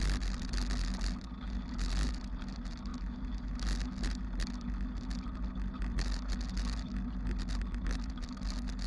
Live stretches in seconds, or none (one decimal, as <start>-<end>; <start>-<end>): 0.0-8.9